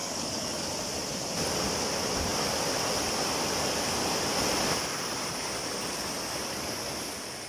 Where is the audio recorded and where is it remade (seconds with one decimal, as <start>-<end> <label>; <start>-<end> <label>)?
0.0-0.7 remade; 0.7-7.5 recorded

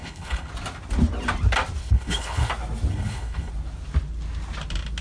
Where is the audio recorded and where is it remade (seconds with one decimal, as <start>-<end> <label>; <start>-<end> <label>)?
0.0-0.5 remade; 0.5-1.8 recorded; 1.8-2.5 remade; 2.5-2.9 recorded; 2.9-3.5 remade; 3.5-5.0 recorded